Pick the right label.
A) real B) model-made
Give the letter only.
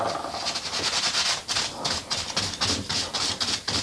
A